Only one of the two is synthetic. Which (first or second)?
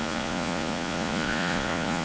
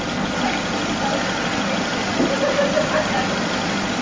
first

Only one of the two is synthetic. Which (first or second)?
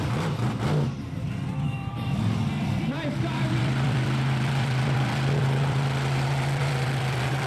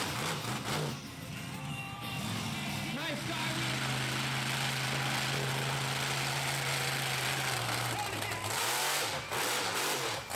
first